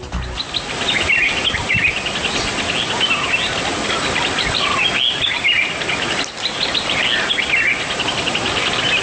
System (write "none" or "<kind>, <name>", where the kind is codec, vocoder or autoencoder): none